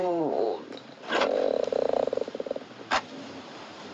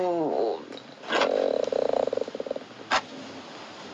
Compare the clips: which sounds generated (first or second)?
first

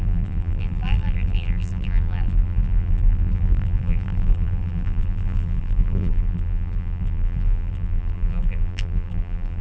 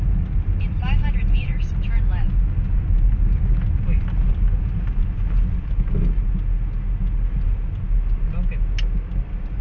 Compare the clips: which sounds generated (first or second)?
first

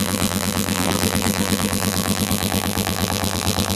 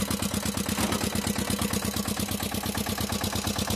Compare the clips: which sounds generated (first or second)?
first